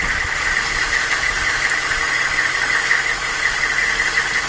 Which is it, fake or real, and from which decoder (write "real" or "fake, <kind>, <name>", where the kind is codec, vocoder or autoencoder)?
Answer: real